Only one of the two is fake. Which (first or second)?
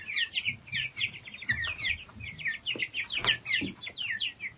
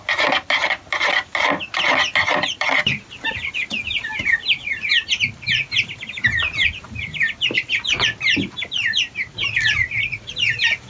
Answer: second